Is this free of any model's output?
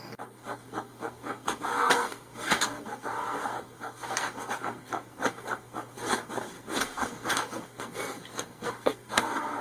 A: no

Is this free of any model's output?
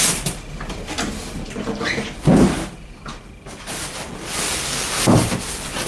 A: yes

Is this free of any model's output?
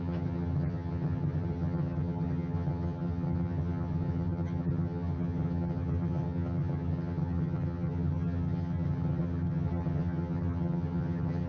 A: no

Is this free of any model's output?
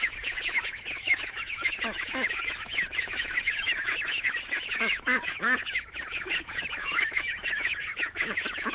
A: no